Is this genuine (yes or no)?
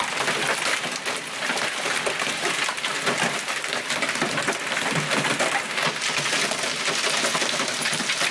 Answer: yes